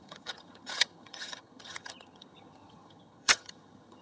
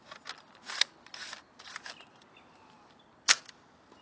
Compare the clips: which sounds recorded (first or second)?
second